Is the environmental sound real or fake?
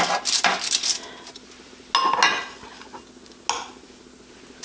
real